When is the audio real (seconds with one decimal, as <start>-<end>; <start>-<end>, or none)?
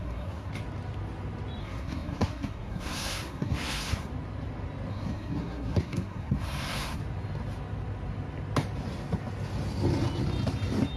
0.5-1.6; 4.1-4.9; 7.0-11.0